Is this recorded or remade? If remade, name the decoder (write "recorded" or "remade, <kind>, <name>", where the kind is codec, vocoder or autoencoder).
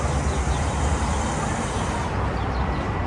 recorded